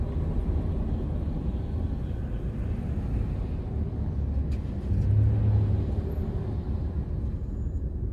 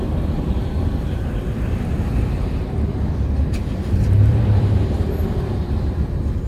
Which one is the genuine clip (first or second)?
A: first